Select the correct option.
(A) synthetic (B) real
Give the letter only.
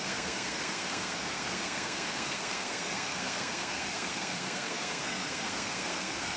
A